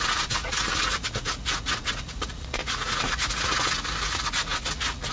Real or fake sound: fake